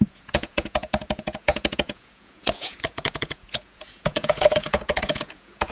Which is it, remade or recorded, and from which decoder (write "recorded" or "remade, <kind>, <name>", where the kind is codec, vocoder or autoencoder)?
remade, vocoder, Vocos